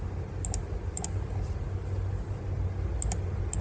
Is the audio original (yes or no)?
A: yes